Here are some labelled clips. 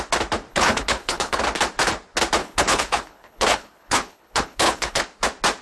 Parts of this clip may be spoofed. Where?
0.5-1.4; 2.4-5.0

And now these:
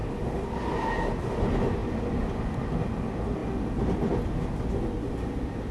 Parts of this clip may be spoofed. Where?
none

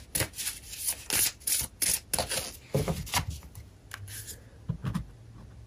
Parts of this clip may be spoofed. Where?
none

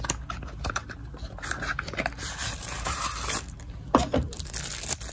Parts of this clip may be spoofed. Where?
none

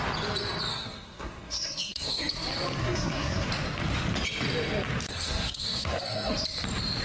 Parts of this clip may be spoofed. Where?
0.7-2.2; 2.8-3.5; 5.1-6.3

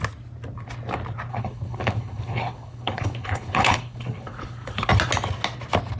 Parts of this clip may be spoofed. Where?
1.3-4.9

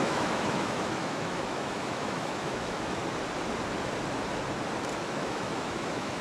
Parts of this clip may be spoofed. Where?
0.0-3.0; 5.0-6.2